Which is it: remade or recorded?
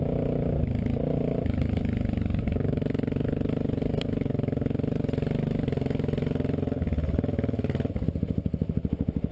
recorded